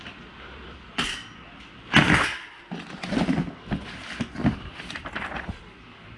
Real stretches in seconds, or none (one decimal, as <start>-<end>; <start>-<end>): 1.2-4.9